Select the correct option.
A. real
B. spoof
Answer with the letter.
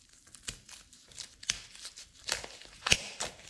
B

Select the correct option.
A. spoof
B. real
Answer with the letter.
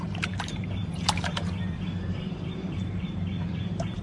A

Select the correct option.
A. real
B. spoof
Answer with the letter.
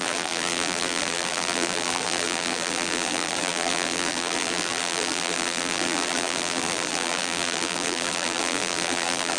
B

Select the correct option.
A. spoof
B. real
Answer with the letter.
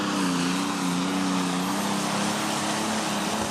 B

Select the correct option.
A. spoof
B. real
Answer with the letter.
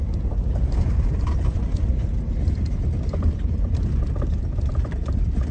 A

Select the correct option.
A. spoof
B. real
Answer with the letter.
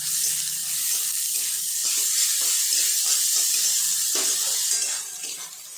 B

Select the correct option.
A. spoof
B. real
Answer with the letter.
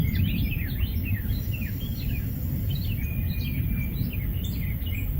B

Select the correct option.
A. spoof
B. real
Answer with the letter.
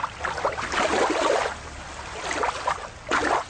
B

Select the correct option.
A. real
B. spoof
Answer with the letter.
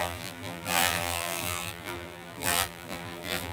B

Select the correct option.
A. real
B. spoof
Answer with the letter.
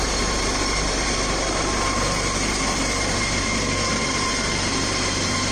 B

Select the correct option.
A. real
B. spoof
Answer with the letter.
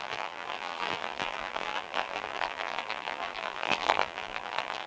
B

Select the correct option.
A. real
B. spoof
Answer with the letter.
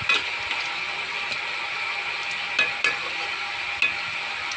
A